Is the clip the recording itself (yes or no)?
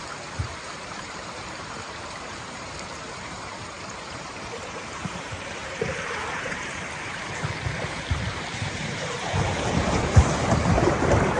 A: no